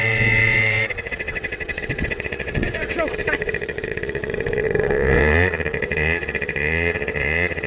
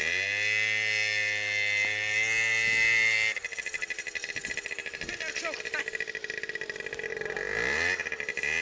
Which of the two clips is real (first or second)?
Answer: second